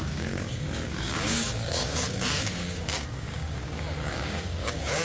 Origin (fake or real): fake